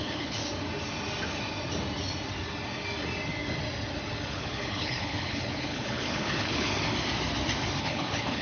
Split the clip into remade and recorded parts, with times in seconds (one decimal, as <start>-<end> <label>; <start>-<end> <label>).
0.0-0.4 remade; 0.4-4.3 recorded; 4.3-6.7 remade; 6.7-7.8 recorded; 7.8-8.4 remade